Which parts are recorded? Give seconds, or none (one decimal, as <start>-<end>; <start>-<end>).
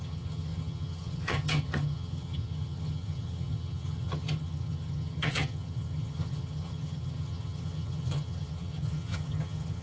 none